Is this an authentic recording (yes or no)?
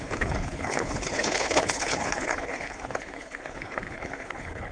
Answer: no